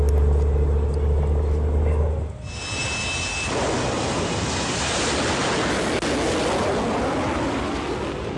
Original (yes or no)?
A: yes